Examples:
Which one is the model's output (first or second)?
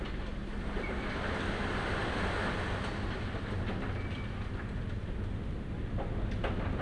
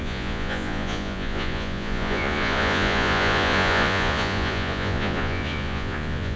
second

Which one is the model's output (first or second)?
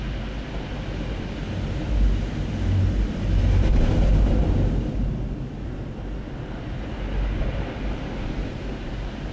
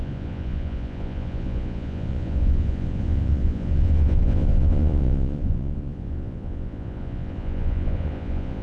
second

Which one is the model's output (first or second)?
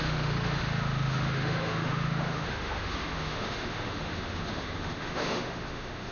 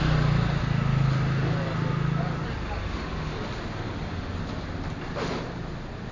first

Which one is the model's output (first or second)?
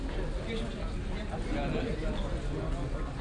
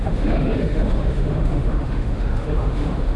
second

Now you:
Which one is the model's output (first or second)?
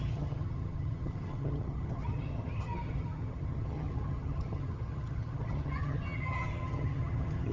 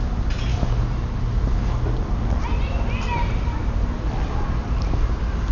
first